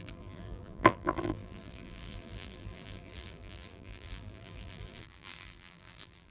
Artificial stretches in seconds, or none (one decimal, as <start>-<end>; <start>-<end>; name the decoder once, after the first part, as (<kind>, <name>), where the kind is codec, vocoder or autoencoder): 0.0-6.3 (vocoder, BigVGAN v2)